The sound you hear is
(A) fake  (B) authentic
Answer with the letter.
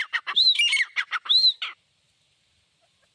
B